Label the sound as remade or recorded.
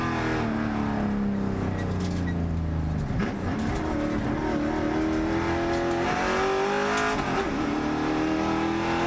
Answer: recorded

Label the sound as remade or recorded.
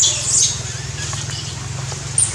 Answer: recorded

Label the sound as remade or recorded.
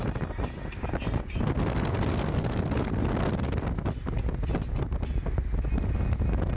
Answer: recorded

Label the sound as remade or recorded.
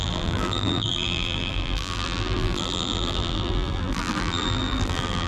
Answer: remade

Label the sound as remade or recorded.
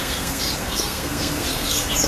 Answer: remade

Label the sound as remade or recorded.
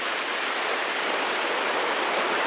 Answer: recorded